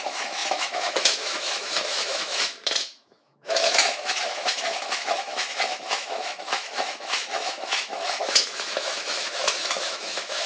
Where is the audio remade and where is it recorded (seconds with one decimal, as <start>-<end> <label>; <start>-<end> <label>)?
0.0-10.5 remade